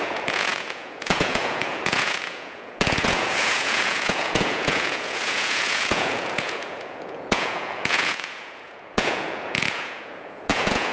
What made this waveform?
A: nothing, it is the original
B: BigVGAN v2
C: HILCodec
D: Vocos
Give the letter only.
D